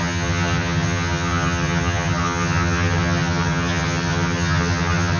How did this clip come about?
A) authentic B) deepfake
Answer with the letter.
B